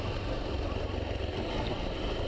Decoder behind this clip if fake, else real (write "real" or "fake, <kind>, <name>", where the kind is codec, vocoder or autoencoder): real